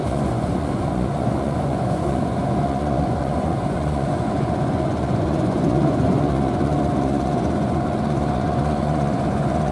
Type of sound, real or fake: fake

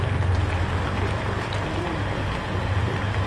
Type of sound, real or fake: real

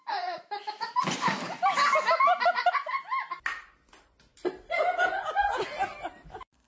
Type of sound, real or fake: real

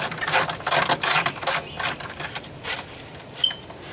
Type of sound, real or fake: real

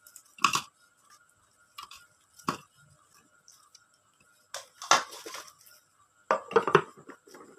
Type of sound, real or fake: real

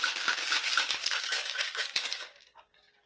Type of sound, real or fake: fake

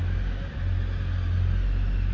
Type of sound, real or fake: real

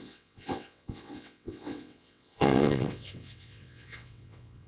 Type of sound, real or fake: fake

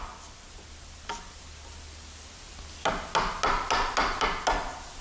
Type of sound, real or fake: real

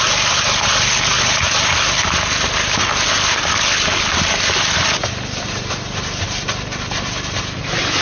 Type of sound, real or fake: real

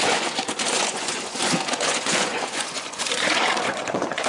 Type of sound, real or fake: fake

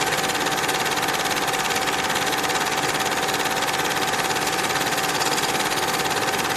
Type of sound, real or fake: real